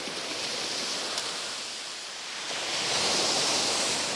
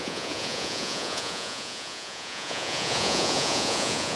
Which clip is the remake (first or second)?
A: second